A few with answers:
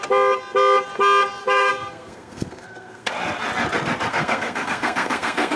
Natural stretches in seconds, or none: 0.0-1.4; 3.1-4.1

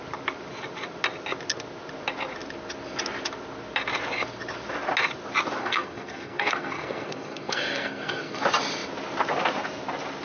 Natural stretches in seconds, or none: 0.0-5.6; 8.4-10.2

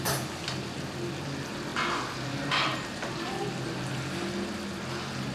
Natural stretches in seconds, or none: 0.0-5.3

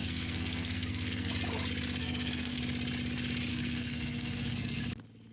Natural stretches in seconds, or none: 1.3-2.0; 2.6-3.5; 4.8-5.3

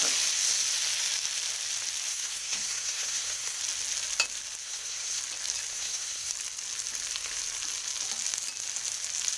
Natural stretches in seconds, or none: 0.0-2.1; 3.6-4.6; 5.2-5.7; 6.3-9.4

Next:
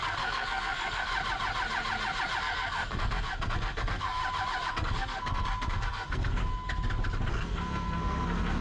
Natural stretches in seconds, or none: 1.1-2.4; 4.2-4.7; 6.4-7.3